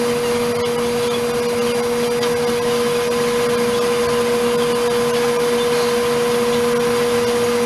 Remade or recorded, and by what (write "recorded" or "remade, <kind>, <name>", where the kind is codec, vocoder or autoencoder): recorded